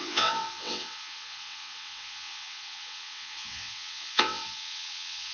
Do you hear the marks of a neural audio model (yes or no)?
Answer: yes